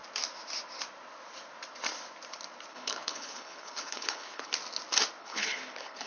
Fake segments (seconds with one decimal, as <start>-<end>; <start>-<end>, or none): 2.7-4.5; 5.2-6.1